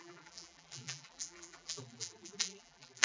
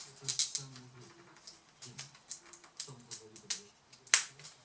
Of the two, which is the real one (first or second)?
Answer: second